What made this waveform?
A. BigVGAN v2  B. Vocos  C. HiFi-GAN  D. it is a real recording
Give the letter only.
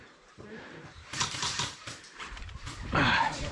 A